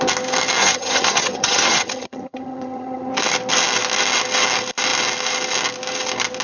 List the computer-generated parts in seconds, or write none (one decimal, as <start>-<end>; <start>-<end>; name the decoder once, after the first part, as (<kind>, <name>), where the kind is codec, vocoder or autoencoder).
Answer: 0.6-3.1 (vocoder, HiFi-GAN)